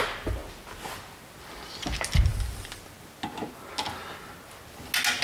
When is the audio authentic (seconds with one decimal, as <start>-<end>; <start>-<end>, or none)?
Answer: 0.0-5.2

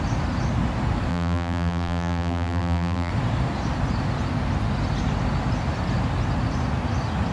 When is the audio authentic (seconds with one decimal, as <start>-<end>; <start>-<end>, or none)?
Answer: 0.0-1.1; 3.1-7.3

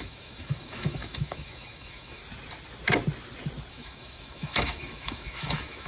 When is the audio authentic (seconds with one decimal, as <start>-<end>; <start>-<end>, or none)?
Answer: 2.2-3.7

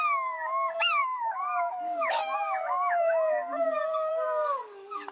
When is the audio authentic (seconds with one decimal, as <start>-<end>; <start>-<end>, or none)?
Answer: none

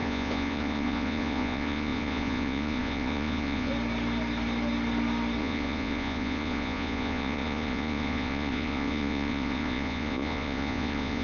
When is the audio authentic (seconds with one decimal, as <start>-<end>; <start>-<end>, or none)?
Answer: 3.7-5.4

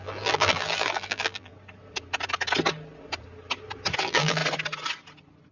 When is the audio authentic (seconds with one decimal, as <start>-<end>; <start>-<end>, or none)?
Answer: 1.5-4.0; 4.4-5.5

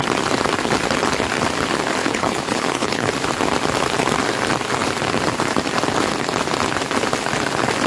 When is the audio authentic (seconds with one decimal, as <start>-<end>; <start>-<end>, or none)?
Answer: 0.0-2.0; 3.1-7.9